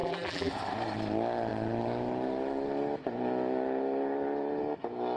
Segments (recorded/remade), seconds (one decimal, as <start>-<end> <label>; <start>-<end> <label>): 0.0-0.5 remade; 0.5-5.2 recorded